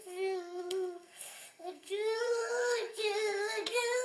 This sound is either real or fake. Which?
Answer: fake